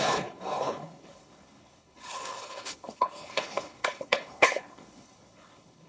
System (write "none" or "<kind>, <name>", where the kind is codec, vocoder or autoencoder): codec, HILCodec